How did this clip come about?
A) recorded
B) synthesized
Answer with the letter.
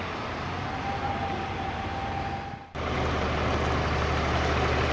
A